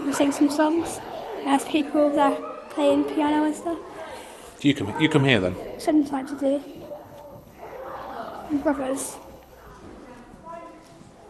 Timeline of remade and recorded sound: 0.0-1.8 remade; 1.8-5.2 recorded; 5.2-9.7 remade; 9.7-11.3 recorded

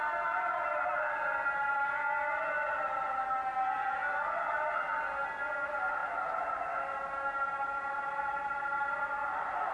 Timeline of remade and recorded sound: 0.0-9.7 recorded

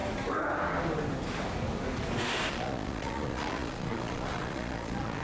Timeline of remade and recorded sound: 0.0-2.5 recorded; 2.5-5.2 remade

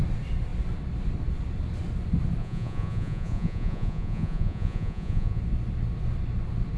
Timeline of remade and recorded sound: 0.0-2.4 recorded; 2.4-5.4 remade; 5.4-6.8 recorded

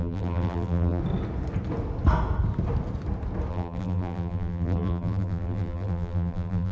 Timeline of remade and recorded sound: 0.0-1.0 remade; 1.0-3.5 recorded; 3.5-6.7 remade

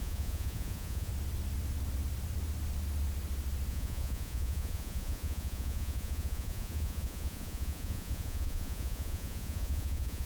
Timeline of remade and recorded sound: 0.0-1.1 remade; 1.1-3.7 recorded; 3.7-10.3 remade